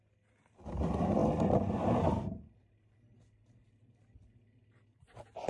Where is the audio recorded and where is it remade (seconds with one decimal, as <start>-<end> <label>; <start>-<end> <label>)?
0.0-5.5 recorded